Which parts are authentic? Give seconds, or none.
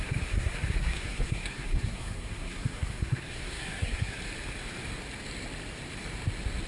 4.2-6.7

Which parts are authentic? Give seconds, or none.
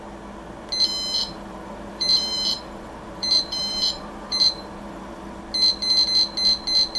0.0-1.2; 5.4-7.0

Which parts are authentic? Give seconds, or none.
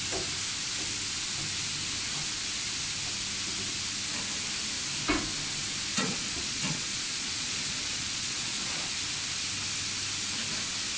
0.0-5.9; 8.9-11.0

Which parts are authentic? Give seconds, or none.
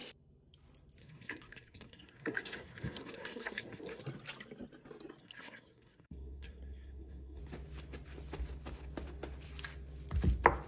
0.0-1.0; 4.0-5.2; 7.4-10.7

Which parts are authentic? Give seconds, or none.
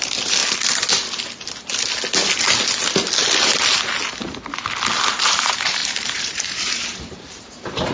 0.4-5.1